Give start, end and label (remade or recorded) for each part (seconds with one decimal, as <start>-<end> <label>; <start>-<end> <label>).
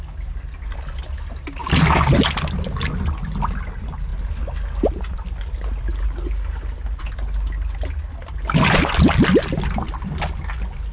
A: 0.0-10.9 recorded